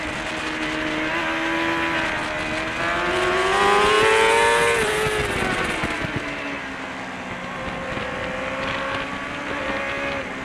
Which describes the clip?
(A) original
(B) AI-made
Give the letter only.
A